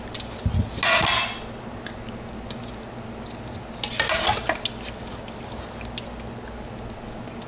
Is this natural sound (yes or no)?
yes